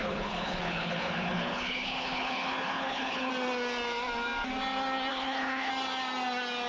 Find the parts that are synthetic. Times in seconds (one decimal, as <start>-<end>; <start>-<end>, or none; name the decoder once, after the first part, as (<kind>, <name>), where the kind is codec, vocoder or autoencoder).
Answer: 0.0-3.3 (codec, HILCodec); 5.1-5.7